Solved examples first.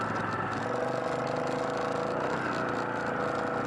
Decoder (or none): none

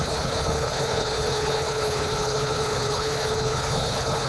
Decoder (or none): codec, HILCodec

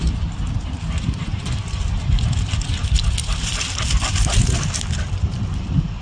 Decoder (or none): none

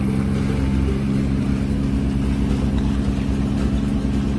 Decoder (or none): none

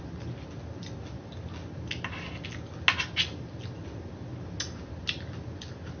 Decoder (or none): none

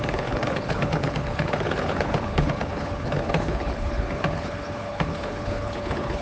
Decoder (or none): codec, HILCodec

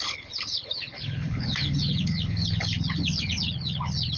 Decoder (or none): codec, HILCodec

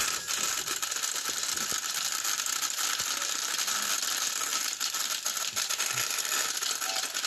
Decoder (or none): none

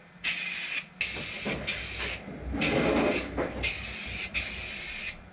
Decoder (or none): none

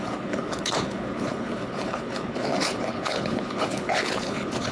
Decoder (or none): codec, HILCodec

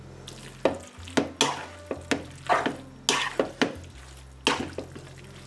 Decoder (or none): none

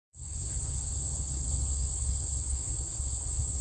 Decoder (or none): codec, HILCodec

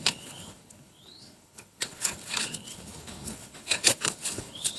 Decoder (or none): codec, HILCodec